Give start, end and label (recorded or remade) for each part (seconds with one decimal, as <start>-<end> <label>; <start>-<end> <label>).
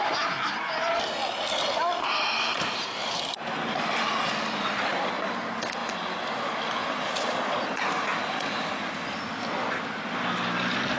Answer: 0.0-11.0 recorded